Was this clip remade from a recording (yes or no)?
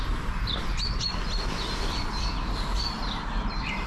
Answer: no